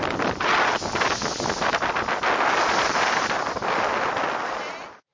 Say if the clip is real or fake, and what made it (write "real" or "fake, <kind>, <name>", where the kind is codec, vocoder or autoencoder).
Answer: real